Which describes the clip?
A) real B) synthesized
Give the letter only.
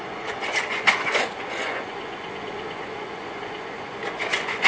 B